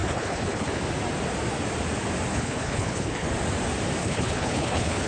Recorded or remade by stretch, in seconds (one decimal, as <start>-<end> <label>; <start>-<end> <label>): 0.0-0.8 remade; 0.8-2.3 recorded; 2.3-3.3 remade; 3.3-4.0 recorded; 4.0-5.1 remade